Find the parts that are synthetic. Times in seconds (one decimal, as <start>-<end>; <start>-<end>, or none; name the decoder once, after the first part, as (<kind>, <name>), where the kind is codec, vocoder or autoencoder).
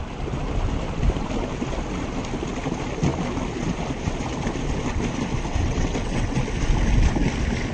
5.5-6.4 (vocoder, WaveNeXt)